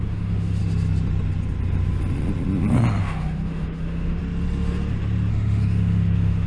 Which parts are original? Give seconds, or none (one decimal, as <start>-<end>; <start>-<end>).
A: 0.6-3.0; 4.2-5.3